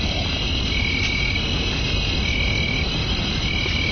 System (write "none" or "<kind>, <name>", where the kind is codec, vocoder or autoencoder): none